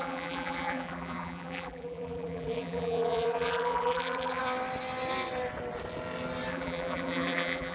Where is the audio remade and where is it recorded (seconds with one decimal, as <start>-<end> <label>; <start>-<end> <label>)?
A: 0.0-4.4 remade; 4.4-6.5 recorded; 6.5-7.7 remade